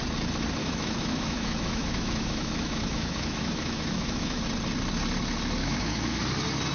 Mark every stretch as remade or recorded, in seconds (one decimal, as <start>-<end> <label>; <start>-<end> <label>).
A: 0.0-0.6 recorded; 0.6-4.4 remade; 4.4-5.6 recorded; 5.6-6.2 remade; 6.2-6.7 recorded